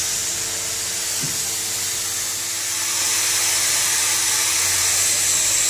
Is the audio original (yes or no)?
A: yes